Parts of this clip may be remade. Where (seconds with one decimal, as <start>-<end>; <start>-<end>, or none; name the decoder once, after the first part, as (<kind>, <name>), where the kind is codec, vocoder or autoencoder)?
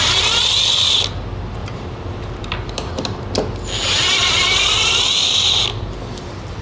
1.6-2.9 (vocoder, BigVGAN v2)